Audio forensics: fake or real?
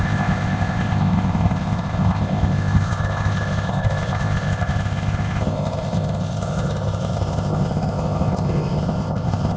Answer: fake